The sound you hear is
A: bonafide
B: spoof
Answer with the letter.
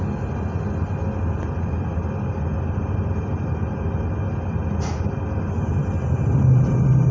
A